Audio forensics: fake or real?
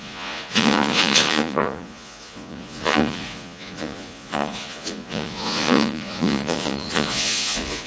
fake